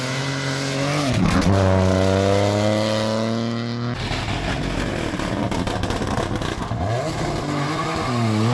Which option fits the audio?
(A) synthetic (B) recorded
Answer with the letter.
B